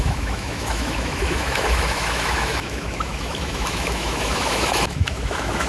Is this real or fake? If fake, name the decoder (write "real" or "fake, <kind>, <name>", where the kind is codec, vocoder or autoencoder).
fake, autoencoder, DAC-VAE